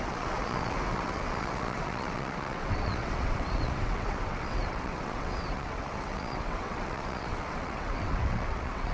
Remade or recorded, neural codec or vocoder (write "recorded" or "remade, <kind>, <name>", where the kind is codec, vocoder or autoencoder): remade, vocoder, WaveNeXt